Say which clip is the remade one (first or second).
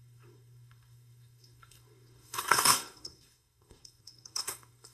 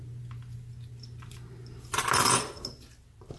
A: first